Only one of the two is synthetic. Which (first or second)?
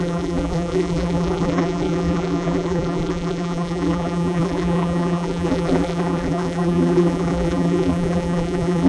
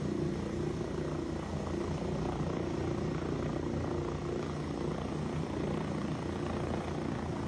first